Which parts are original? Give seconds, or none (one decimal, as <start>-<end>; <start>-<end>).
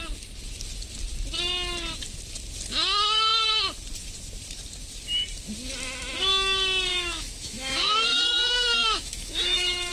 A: 0.0-6.9